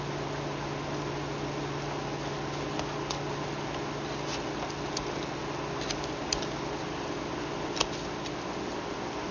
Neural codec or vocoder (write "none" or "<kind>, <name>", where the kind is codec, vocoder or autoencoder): none